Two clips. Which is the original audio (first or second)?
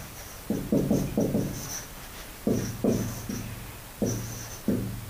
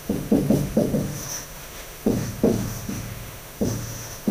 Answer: first